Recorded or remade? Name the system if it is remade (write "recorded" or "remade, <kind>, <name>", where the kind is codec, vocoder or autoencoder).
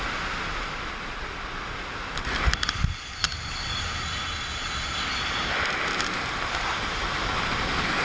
recorded